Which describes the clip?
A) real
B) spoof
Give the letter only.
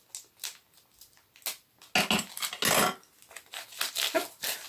A